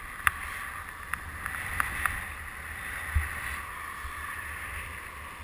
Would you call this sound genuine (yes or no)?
yes